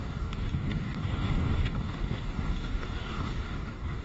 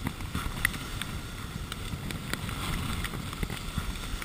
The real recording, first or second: second